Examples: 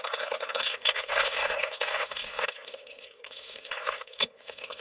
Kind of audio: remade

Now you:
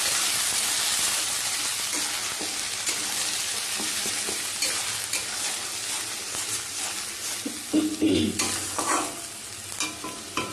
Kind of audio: recorded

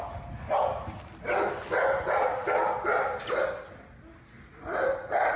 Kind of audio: recorded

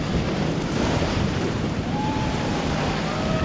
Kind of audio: remade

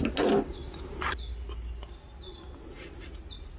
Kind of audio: recorded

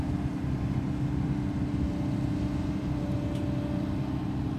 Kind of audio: recorded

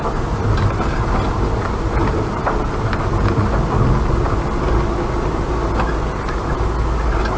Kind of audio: recorded